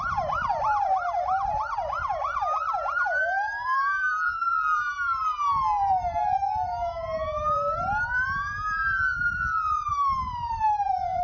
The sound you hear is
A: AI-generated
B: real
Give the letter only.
A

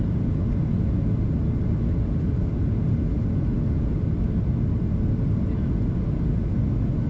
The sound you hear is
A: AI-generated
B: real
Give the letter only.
B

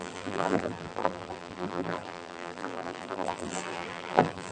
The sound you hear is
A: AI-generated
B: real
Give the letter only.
A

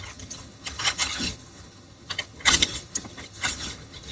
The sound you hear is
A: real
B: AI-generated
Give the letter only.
B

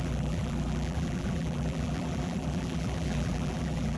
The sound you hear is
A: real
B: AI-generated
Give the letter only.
B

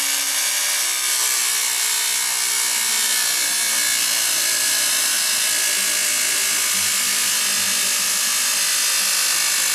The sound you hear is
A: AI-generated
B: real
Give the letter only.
B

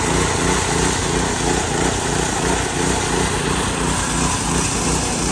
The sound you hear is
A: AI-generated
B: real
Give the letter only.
B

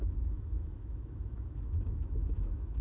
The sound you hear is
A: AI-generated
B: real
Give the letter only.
A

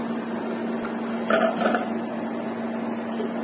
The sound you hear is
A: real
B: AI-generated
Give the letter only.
A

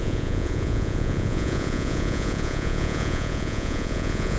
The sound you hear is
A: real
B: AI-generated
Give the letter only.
B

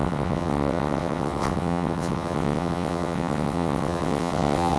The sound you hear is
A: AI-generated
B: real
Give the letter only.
A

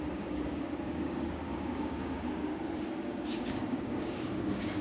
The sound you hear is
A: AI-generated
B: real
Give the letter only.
A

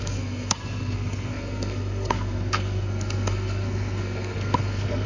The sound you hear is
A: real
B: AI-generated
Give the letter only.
B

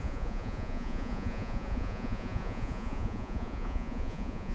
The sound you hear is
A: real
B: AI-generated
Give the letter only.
B